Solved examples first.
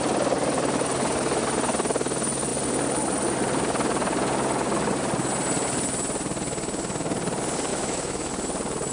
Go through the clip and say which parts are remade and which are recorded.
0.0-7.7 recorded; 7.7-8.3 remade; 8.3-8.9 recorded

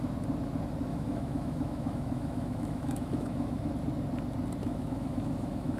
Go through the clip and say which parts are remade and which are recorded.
0.0-0.9 recorded; 0.9-3.7 remade; 3.7-4.6 recorded; 4.6-5.8 remade

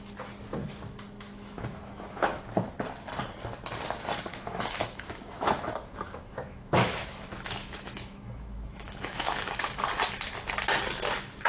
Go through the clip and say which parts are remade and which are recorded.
0.0-0.6 recorded; 0.6-2.4 remade; 2.4-4.3 recorded; 4.3-9.5 remade; 9.5-11.5 recorded

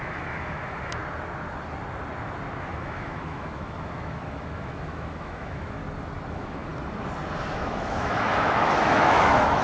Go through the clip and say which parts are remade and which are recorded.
0.0-1.0 remade; 1.0-2.6 recorded; 2.6-5.8 remade; 5.8-6.3 recorded; 6.3-6.7 remade; 6.7-7.5 recorded; 7.5-9.6 remade

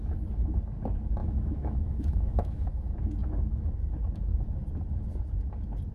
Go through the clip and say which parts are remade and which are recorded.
0.0-1.2 recorded; 1.2-2.7 remade; 2.7-5.9 recorded

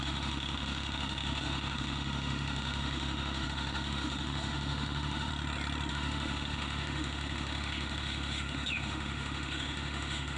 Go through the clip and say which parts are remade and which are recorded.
0.0-5.3 remade; 5.3-5.9 recorded; 5.9-10.4 remade

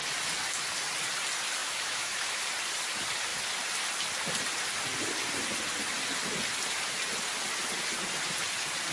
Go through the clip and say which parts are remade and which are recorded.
0.0-1.6 recorded; 1.6-2.4 remade; 2.4-8.9 recorded

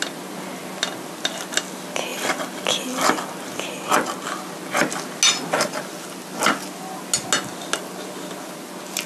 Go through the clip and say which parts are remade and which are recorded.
0.0-9.1 recorded